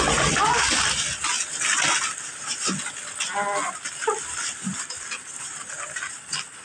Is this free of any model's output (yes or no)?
yes